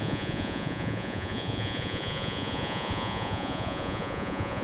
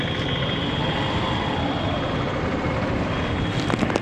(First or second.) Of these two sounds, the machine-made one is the first